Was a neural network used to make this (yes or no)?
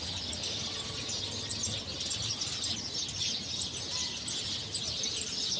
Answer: no